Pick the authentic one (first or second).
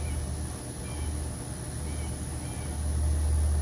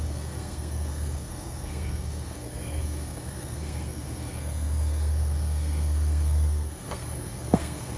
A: first